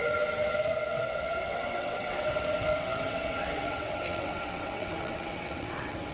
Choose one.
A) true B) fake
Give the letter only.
B